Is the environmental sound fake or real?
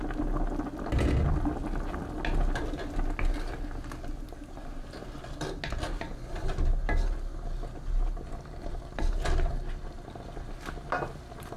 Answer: real